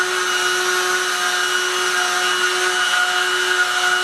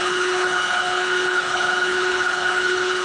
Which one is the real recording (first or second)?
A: first